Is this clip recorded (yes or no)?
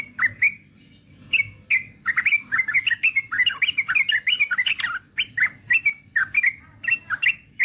yes